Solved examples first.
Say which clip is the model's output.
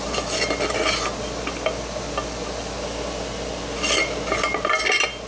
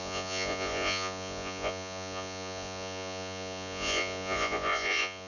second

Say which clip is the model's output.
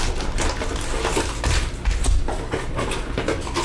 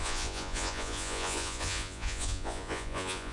second